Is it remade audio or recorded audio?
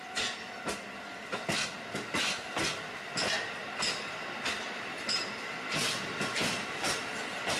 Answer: recorded